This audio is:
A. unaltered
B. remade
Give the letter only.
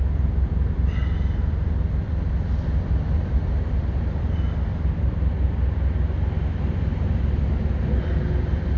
B